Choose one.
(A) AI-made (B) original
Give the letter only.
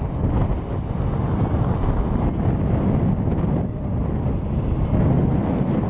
B